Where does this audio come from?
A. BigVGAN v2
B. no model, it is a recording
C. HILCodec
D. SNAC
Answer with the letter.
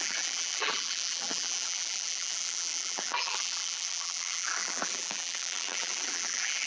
A